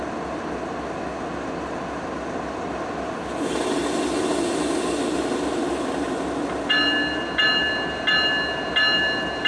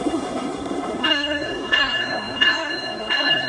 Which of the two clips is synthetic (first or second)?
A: second